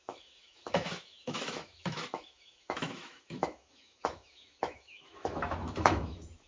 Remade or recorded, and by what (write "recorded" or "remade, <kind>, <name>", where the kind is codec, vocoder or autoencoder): remade, autoencoder, DAC-VAE